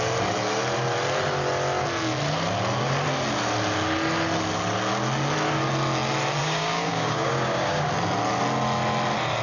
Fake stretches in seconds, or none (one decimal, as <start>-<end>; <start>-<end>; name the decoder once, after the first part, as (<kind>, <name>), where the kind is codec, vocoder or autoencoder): 6.4-7.9 (codec, DAC)